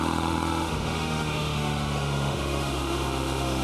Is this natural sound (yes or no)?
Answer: no